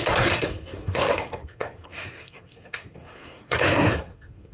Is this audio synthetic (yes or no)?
yes